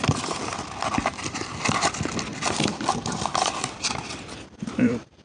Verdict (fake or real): fake